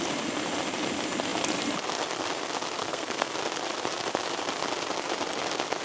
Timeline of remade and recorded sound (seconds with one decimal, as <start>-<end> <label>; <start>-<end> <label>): 0.0-2.8 recorded; 2.8-3.3 remade; 3.3-5.8 recorded